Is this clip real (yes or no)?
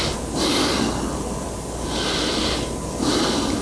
yes